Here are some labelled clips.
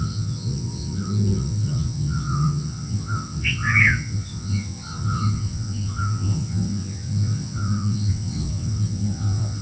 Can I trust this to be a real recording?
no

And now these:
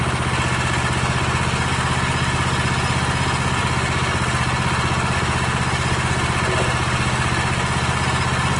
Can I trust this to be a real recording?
yes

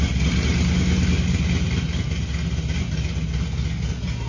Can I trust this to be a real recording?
yes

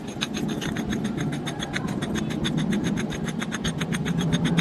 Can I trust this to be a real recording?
yes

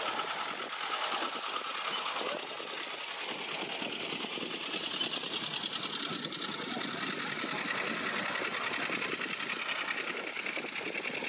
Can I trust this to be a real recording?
yes